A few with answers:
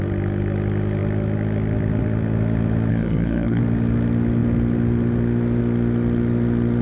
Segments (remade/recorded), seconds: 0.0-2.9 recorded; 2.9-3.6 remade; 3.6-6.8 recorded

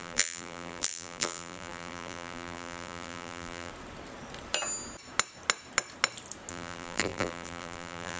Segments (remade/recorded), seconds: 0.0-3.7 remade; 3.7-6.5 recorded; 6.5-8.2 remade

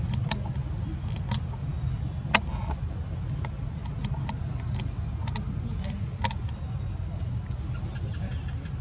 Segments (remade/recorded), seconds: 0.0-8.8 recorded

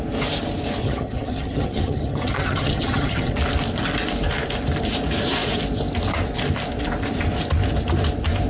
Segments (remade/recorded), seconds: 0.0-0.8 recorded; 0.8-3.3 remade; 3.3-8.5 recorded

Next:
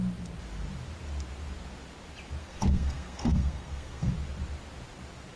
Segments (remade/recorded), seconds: 0.0-2.4 recorded; 2.4-4.1 remade; 4.1-5.4 recorded

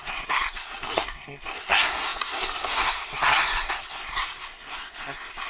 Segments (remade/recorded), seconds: 0.0-5.5 remade

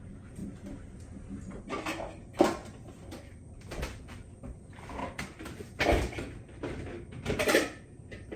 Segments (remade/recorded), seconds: 0.0-8.4 recorded

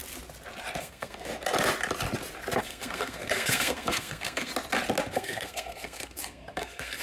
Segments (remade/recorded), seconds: 0.0-0.8 recorded; 0.8-1.3 remade; 1.3-2.6 recorded; 2.6-4.5 remade; 4.5-5.1 recorded; 5.1-7.0 remade